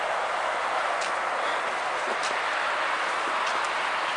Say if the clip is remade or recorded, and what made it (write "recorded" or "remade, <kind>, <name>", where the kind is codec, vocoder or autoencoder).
recorded